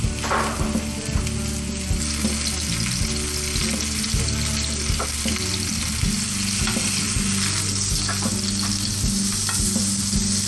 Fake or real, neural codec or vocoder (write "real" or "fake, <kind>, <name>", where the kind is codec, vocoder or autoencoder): real